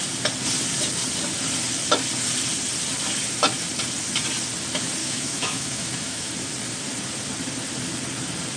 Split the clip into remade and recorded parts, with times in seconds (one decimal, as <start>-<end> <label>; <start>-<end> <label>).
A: 0.0-5.0 recorded; 5.0-6.3 remade; 6.3-8.6 recorded